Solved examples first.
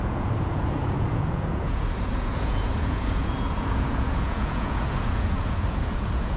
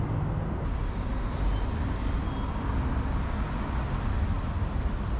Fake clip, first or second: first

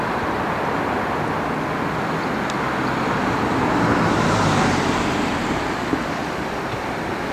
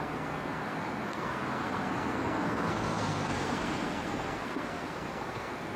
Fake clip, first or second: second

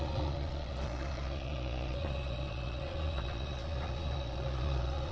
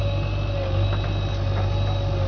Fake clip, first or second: first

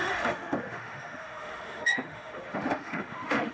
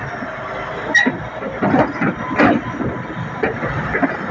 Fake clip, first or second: first